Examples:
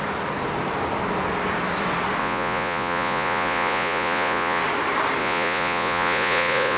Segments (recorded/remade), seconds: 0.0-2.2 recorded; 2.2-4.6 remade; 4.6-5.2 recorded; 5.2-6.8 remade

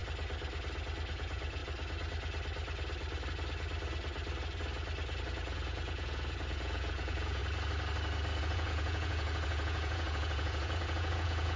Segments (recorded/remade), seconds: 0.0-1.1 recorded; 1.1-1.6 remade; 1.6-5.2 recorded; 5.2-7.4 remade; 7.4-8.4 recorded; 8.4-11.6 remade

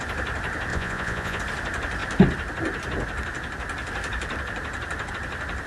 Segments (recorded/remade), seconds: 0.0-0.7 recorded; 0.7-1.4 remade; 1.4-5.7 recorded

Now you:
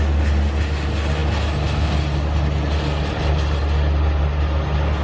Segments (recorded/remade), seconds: 0.0-5.0 recorded

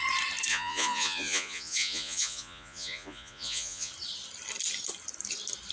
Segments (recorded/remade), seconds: 0.0-0.5 recorded; 0.5-3.9 remade; 3.9-5.7 recorded

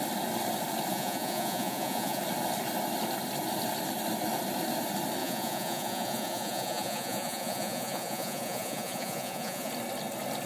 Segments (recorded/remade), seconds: 0.0-0.9 recorded; 0.9-2.2 remade; 2.2-5.2 recorded; 5.2-9.7 remade; 9.7-10.5 recorded